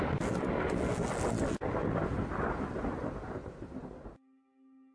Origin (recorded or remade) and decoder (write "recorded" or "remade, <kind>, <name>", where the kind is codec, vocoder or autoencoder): recorded